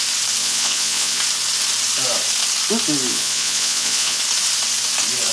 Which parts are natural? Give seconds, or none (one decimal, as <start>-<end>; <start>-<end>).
0.0-0.4; 1.2-3.1; 4.2-5.3